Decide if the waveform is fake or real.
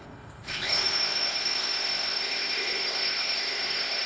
fake